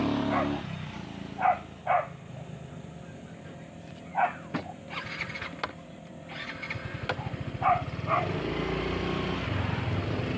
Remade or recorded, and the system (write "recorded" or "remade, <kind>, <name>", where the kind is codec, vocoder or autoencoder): recorded